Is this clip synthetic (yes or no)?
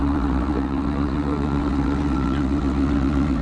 yes